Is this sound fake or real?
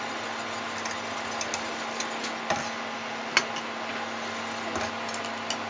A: real